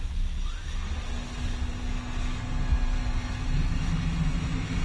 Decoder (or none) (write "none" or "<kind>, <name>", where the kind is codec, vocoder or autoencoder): none